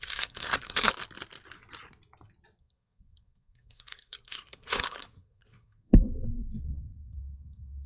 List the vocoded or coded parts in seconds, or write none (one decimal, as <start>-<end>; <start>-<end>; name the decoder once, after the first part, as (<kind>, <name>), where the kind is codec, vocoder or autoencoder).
0.0-0.9 (codec, SNAC); 2.6-7.9